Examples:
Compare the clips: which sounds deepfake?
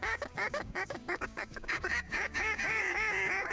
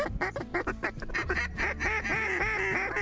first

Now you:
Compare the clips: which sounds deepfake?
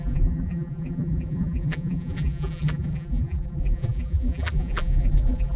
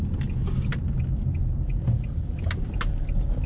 first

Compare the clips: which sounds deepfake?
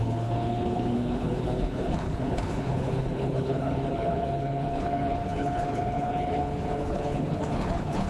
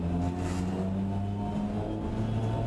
first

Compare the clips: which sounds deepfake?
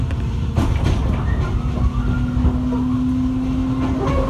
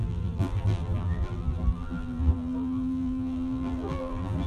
second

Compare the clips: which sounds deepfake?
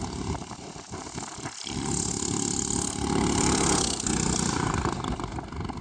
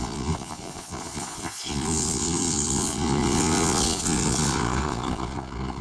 second